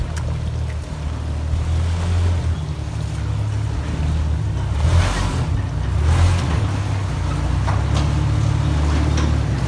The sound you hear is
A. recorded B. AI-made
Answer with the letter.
A